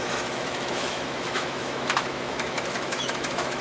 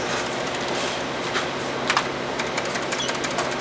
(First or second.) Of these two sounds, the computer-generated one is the first